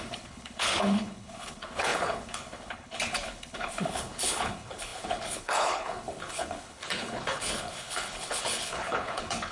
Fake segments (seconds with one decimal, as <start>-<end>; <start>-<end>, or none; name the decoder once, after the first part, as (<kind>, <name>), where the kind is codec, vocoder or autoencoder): 0.0-9.5 (codec, HILCodec)